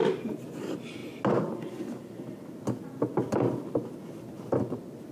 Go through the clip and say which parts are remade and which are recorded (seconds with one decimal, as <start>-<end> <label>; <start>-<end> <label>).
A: 0.0-5.1 recorded

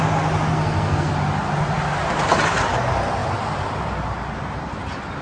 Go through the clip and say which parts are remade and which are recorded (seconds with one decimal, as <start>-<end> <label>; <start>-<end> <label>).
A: 0.0-0.5 recorded; 0.5-1.1 remade; 1.1-5.2 recorded

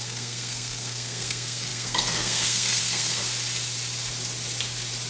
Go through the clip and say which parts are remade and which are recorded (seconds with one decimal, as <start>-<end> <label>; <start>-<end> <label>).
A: 0.0-3.2 remade; 3.2-5.1 recorded

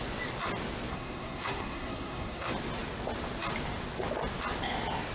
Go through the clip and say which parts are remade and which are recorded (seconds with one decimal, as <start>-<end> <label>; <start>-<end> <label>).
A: 0.0-0.9 recorded; 0.9-2.5 remade; 2.5-5.1 recorded

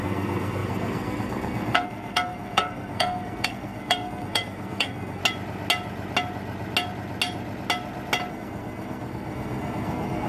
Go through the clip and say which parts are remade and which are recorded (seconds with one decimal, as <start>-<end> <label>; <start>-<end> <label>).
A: 0.0-5.2 remade; 5.2-8.3 recorded; 8.3-10.3 remade

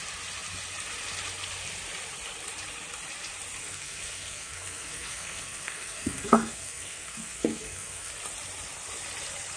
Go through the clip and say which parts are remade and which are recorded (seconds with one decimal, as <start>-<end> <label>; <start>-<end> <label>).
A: 0.0-3.6 recorded; 3.6-8.1 remade; 8.1-9.6 recorded